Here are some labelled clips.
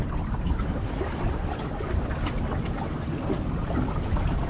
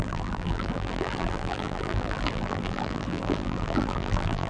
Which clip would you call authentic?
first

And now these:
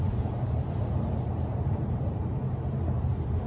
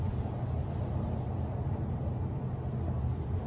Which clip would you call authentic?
second